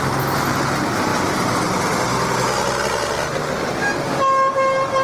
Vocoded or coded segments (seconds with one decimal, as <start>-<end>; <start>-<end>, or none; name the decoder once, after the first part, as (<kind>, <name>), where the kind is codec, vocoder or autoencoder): none